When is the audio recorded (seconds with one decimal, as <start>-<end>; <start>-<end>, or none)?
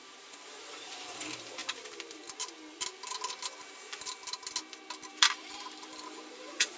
1.6-5.1